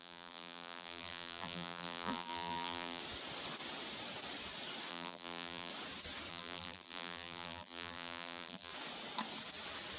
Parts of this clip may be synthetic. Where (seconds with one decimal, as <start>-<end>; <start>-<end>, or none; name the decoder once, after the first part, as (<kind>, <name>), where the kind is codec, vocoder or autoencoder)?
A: 0.0-3.0 (vocoder, BigVGAN v2); 4.9-5.7; 6.3-8.7